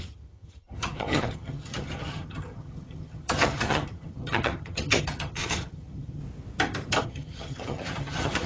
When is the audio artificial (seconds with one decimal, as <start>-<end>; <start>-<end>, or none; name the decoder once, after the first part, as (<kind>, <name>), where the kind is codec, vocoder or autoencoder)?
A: 0.0-6.2 (vocoder, HiFi-GAN); 7.0-8.5